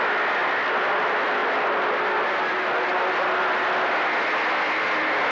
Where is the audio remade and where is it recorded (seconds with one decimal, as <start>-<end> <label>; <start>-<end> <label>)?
0.0-0.4 recorded; 0.4-0.9 remade; 0.9-5.3 recorded